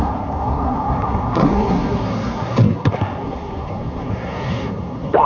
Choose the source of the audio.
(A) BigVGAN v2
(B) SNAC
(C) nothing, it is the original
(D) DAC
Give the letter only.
B